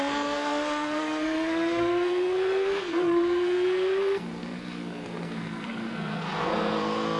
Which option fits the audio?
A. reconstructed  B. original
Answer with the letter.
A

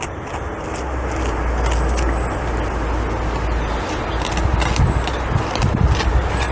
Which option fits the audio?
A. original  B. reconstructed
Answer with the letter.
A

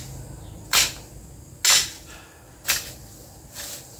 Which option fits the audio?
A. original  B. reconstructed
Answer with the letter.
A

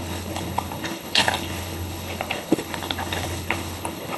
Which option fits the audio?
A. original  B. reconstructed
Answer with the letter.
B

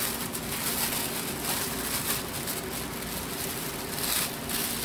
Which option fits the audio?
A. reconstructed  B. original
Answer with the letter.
B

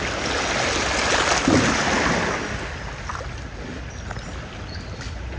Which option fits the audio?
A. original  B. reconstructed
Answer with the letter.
A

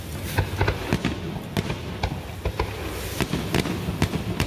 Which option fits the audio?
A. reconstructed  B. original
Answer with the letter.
B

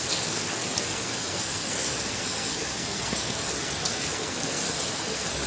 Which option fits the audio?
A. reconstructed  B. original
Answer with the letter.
A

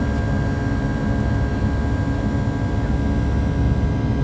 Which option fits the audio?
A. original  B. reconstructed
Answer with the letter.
A